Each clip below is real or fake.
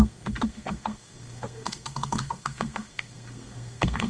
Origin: fake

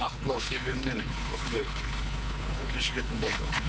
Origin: fake